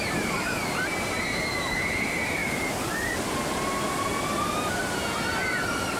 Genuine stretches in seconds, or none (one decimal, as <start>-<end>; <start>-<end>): 0.0-6.0